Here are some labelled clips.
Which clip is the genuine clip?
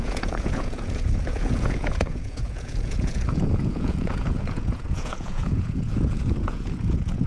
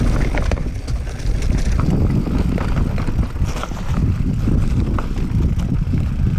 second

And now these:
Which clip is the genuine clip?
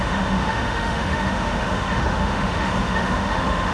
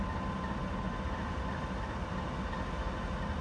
second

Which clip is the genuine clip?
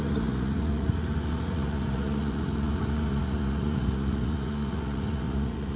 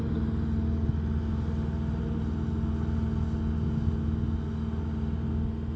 second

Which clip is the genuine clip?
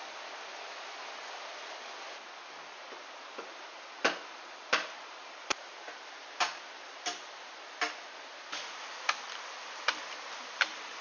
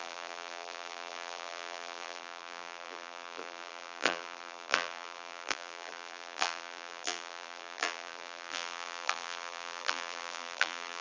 first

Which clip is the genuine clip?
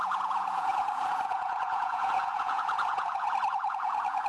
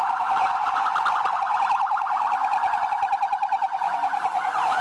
second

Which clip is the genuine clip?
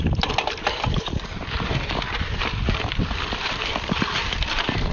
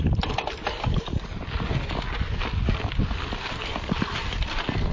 second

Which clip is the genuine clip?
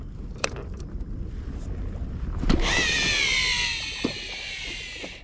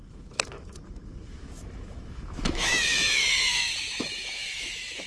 first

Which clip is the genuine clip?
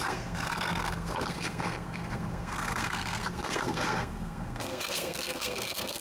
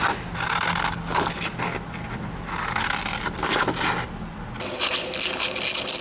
second